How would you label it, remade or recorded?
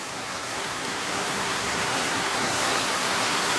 remade